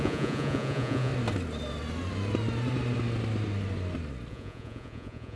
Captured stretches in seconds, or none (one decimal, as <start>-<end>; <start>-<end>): 1.1-4.3

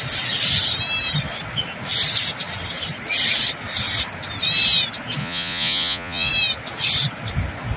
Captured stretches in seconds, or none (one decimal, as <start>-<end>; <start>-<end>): 0.0-5.2; 6.3-7.8

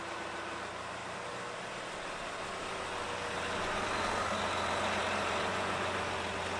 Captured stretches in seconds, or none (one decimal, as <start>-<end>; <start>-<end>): 0.0-5.5; 6.0-6.6

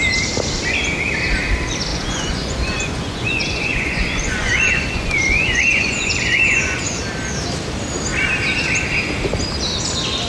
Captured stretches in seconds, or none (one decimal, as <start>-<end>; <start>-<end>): 0.0-1.9; 7.0-10.3

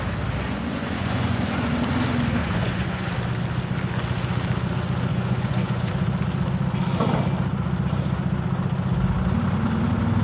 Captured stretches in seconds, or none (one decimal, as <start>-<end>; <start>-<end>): 0.0-0.4; 1.7-2.4; 3.1-5.1; 5.9-10.2

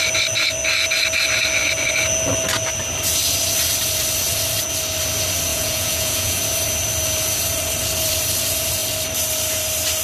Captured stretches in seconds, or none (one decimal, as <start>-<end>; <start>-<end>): 0.0-5.5; 6.4-10.0